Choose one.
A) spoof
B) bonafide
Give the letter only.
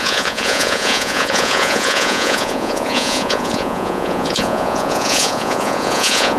A